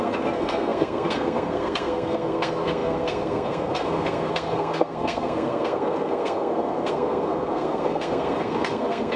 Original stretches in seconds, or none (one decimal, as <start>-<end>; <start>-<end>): none